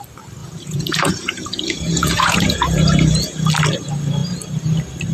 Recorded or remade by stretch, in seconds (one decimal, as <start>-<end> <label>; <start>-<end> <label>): 0.0-0.4 recorded; 0.4-3.5 remade; 3.5-5.1 recorded